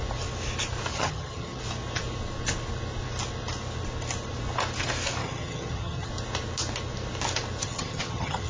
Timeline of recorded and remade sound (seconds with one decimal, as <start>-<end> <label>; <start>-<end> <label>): 0.0-0.9 recorded; 0.9-1.6 remade; 1.6-5.2 recorded; 5.2-6.1 remade; 6.1-7.6 recorded; 7.6-8.5 remade

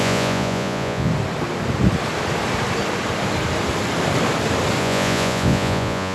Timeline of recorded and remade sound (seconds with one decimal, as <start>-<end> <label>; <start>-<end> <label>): 0.0-1.1 remade; 1.1-4.8 recorded; 4.8-6.1 remade

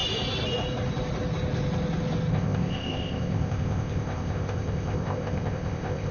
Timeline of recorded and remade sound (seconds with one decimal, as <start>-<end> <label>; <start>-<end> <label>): 0.0-2.3 recorded; 2.3-6.1 remade

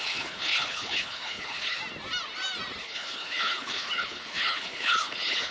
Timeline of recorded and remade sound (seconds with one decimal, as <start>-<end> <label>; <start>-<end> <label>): 0.0-1.8 remade; 1.8-2.8 recorded; 2.8-5.5 remade

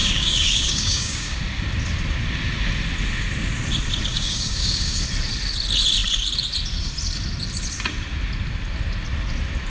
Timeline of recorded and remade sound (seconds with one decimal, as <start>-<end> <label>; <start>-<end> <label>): 0.0-1.4 remade; 1.4-4.1 recorded; 4.1-5.0 remade; 5.0-9.7 recorded

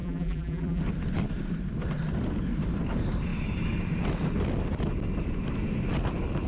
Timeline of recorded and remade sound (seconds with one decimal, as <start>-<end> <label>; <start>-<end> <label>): 0.0-0.8 remade; 0.8-6.5 recorded

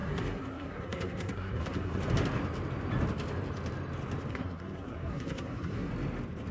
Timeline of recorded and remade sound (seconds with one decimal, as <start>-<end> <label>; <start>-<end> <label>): 0.0-2.0 remade; 2.0-4.3 recorded; 4.3-5.9 remade; 5.9-6.5 recorded